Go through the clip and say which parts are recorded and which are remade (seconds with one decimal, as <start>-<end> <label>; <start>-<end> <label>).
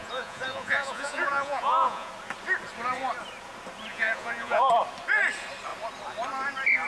0.0-2.1 remade; 2.1-3.9 recorded; 3.9-4.7 remade; 4.7-6.9 recorded